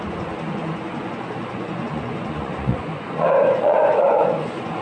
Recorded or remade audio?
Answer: remade